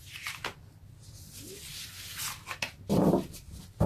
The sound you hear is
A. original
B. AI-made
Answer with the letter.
A